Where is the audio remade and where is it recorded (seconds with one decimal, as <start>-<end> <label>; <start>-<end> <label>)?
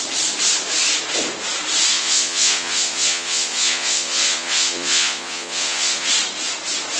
0.0-1.9 recorded; 1.9-6.1 remade; 6.1-7.0 recorded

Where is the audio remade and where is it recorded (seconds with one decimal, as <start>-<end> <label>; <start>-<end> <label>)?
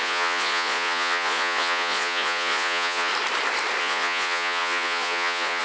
0.0-3.1 remade; 3.1-3.8 recorded; 3.8-5.6 remade